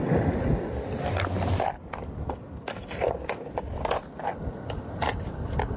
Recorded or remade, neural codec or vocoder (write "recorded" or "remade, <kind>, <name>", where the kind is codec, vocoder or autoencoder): recorded